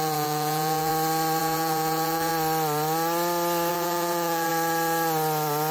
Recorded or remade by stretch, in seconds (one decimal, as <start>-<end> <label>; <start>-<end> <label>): 0.0-0.9 remade; 0.9-1.4 recorded; 1.4-2.3 remade; 2.3-3.7 recorded; 3.7-4.5 remade; 4.5-5.7 recorded